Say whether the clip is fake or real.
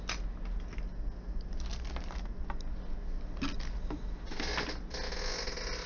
real